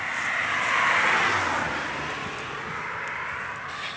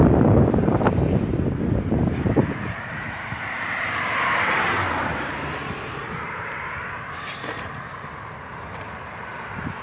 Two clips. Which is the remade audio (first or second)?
second